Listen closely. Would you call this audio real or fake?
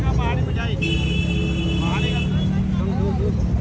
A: real